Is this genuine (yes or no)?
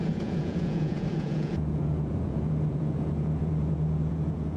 no